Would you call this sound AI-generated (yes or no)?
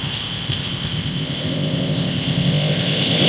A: yes